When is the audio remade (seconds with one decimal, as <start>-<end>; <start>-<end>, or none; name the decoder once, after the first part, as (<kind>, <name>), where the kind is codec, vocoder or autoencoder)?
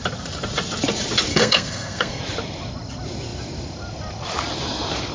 1.3-2.2 (codec, SNAC)